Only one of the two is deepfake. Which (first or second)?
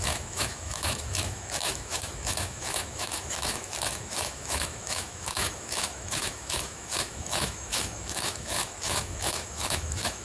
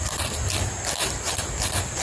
first